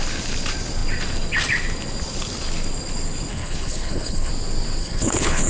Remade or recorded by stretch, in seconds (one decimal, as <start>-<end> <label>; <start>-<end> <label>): 0.0-3.3 recorded; 3.3-4.3 remade; 4.3-4.8 recorded; 4.8-5.5 remade